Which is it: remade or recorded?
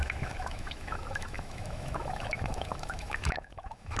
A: remade